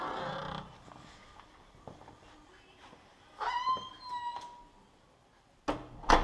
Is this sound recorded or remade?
recorded